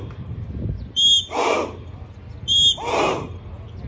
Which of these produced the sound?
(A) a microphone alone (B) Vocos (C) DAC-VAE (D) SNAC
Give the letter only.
A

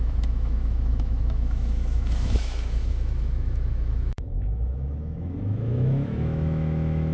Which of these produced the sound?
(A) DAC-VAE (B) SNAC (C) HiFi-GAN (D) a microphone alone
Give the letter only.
A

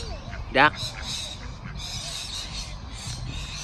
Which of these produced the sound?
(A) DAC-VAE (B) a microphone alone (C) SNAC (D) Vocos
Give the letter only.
B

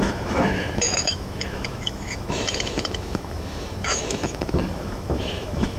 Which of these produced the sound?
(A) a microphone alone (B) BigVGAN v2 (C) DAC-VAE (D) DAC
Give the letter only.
C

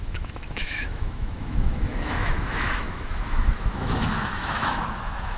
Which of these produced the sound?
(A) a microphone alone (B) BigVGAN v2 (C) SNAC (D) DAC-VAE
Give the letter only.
D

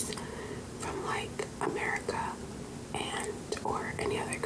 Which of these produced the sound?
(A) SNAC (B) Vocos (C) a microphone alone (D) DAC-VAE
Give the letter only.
C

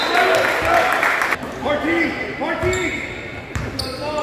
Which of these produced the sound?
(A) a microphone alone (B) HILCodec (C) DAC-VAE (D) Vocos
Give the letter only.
A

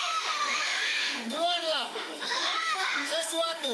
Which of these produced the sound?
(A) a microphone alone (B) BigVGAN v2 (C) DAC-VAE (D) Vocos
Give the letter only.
C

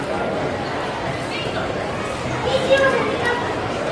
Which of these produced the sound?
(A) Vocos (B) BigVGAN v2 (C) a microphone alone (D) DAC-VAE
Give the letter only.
C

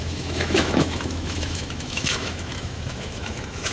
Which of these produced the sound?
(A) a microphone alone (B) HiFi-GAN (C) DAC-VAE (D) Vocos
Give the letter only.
C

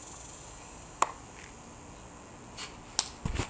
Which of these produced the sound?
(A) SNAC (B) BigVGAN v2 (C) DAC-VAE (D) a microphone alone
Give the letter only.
D